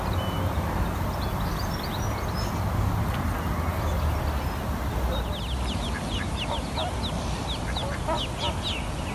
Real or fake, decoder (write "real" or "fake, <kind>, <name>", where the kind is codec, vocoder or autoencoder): real